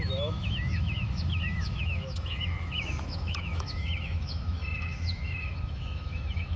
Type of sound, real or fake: fake